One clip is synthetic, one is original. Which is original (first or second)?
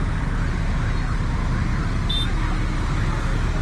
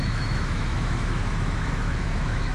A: first